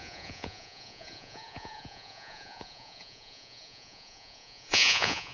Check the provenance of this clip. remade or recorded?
remade